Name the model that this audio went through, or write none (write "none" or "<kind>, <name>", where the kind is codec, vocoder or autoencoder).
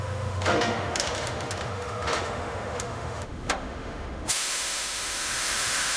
autoencoder, DAC-VAE